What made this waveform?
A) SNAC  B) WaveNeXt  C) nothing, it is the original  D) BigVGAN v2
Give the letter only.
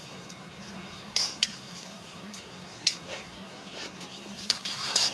A